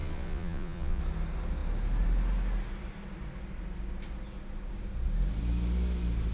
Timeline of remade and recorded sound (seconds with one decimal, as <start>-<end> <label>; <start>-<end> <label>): 0.0-1.0 remade; 1.0-6.3 recorded